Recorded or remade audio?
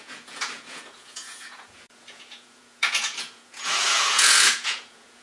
remade